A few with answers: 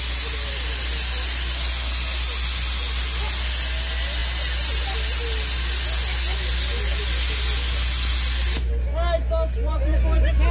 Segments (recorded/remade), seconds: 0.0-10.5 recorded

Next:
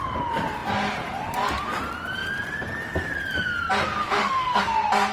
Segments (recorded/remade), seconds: 0.0-4.0 recorded; 4.0-4.6 remade; 4.6-5.1 recorded

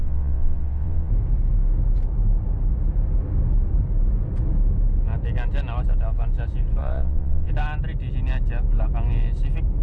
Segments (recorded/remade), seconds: 0.0-1.1 remade; 1.1-6.8 recorded; 6.8-7.5 remade; 7.5-9.8 recorded

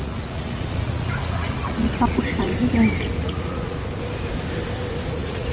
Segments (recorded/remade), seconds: 0.0-2.5 remade; 2.5-3.2 recorded; 3.2-3.8 remade; 3.8-5.1 recorded; 5.1-5.5 remade

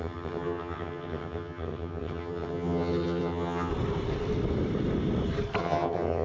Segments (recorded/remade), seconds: 0.0-3.7 remade; 3.7-5.6 recorded; 5.6-6.2 remade

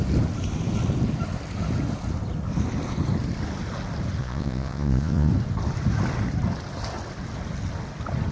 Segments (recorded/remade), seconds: 0.0-4.2 recorded; 4.2-5.3 remade; 5.3-8.3 recorded

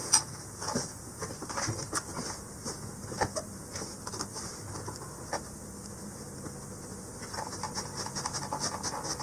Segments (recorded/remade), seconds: 0.0-1.3 remade; 1.3-9.2 recorded